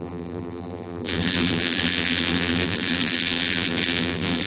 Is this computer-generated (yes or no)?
yes